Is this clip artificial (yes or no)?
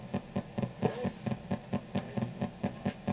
no